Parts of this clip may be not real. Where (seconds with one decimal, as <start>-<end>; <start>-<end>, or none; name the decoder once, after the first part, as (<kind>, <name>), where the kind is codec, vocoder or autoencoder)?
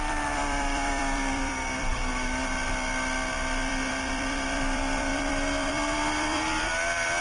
0.0-1.9 (vocoder, BigVGAN v2); 3.6-7.2